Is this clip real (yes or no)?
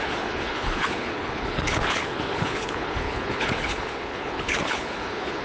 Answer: no